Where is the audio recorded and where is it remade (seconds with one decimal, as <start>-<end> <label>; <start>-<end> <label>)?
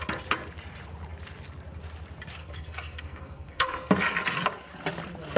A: 0.0-2.4 recorded; 2.4-3.9 remade; 3.9-5.4 recorded